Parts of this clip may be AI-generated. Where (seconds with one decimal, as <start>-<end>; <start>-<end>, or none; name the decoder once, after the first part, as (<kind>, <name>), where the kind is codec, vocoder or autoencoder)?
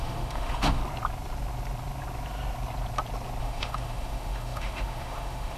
0.0-0.8 (autoencoder, DAC-VAE); 3.4-5.6